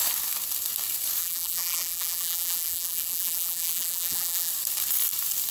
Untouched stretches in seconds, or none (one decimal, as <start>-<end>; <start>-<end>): 0.0-1.2; 4.5-5.5